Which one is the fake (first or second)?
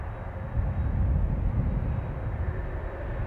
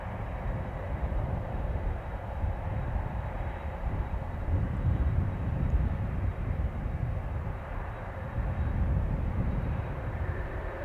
second